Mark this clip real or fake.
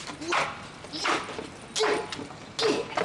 real